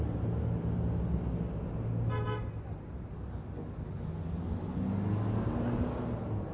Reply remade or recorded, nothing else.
recorded